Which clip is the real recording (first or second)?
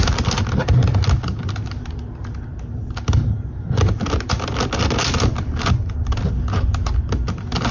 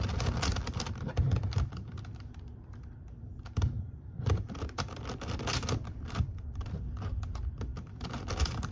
first